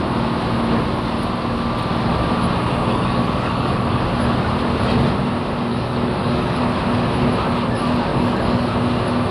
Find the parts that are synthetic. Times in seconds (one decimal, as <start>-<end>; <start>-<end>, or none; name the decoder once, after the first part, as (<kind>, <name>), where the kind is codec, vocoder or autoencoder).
2.9-4.0 (codec, DAC); 5.7-6.6; 8.1-8.7